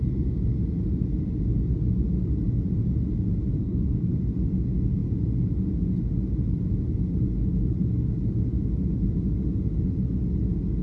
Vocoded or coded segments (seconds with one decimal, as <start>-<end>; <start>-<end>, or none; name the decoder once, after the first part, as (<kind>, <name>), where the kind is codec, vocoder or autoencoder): 3.6-4.1 (codec, SNAC)